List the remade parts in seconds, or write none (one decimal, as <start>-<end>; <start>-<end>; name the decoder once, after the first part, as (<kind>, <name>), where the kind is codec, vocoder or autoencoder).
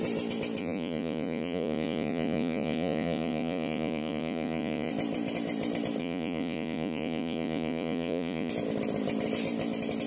0.6-4.9 (vocoder, Vocos); 6.0-8.5